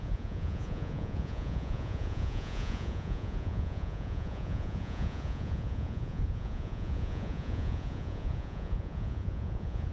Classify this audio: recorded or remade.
remade